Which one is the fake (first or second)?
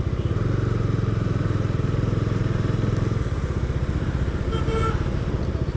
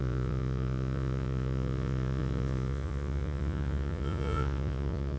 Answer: second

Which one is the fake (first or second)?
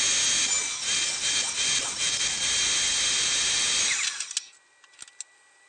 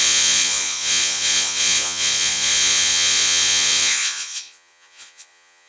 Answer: second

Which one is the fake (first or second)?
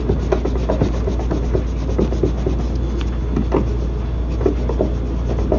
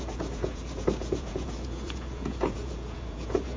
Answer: second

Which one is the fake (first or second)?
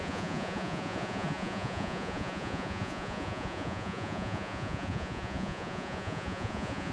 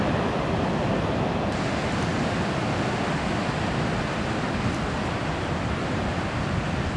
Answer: first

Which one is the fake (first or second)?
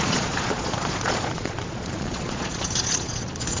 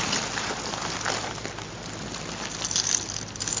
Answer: first